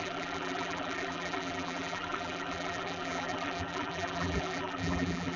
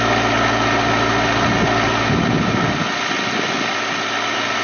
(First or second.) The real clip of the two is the second